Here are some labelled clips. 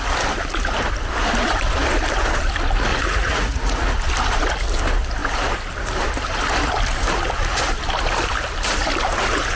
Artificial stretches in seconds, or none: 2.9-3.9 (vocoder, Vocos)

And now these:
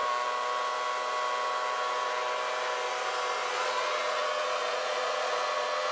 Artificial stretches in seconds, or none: 3.5-5.9 (vocoder, Vocos)

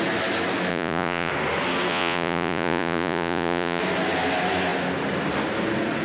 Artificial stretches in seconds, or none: 0.7-1.3 (vocoder, Vocos); 1.9-3.8

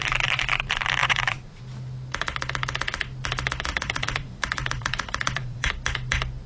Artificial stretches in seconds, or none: 1.0-1.6 (vocoder, Vocos); 3.7-5.7

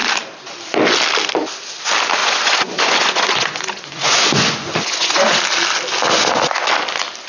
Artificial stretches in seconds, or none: 2.2-5.4 (vocoder, Vocos)

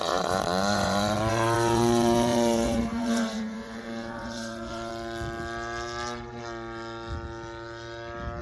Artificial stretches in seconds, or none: 0.0-4.9 (vocoder, Vocos)